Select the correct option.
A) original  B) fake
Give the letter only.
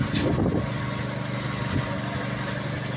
A